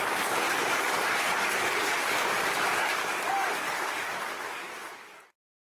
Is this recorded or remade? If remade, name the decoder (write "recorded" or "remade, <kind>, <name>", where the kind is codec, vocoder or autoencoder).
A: remade, codec, DAC